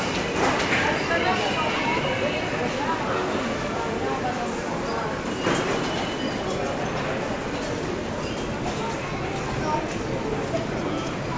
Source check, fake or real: real